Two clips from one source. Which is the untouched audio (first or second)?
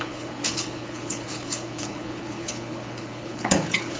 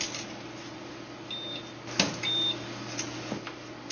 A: second